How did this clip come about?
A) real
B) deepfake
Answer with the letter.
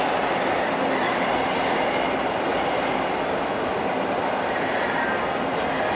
A